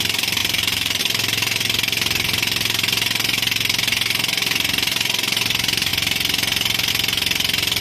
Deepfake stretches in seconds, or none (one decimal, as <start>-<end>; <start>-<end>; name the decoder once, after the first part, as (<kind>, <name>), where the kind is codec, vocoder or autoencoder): 0.4-1.0 (vocoder, BigVGAN v2)

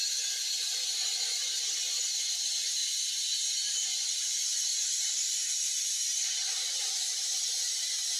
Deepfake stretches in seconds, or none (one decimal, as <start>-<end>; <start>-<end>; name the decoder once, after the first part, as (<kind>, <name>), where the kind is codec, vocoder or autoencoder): 4.7-7.7 (vocoder, BigVGAN v2)

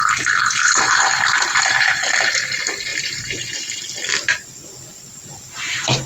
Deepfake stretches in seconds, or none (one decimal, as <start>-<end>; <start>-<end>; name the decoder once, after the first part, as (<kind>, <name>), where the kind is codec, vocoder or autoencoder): 0.6-2.1 (vocoder, BigVGAN v2); 2.9-3.8; 4.9-6.1

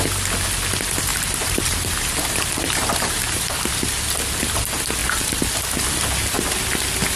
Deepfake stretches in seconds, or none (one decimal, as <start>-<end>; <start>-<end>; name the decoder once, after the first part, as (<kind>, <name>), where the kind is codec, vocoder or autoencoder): 1.1-3.7 (vocoder, BigVGAN v2)